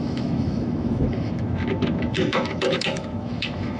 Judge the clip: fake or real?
fake